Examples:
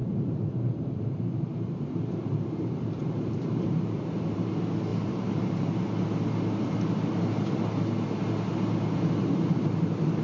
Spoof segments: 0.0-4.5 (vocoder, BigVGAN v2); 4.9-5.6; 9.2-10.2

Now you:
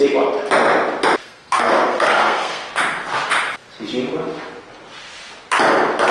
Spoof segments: 1.2-2.7 (codec, SNAC)

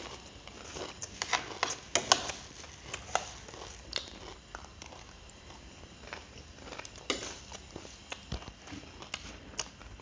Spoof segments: 4.7-5.7 (vocoder, BigVGAN v2)

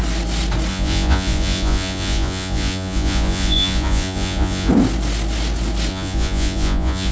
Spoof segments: 0.7-4.7 (vocoder, Vocos); 5.9-7.1

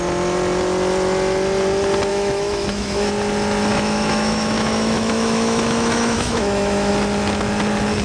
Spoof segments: 2.1-3.1 (autoencoder, DAC-VAE); 3.7-6.9